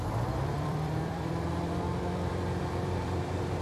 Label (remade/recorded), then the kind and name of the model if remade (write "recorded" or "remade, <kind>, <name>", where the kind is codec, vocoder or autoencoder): remade, vocoder, BigVGAN v2